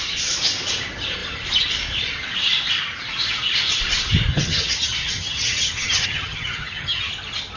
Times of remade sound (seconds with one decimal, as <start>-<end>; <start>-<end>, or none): 4.3-7.1